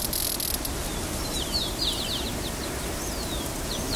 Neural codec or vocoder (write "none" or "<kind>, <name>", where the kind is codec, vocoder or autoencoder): none